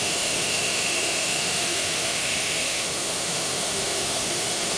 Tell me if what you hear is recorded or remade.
remade